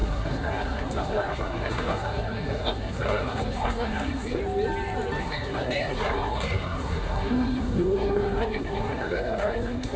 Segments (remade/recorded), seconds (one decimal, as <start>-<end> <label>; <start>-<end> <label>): 0.0-4.4 remade; 4.4-5.2 recorded; 5.2-10.0 remade